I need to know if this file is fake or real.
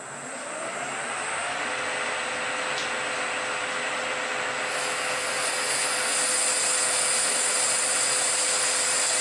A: real